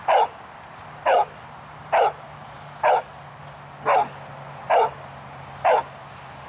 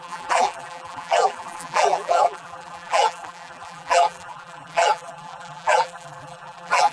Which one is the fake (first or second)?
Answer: second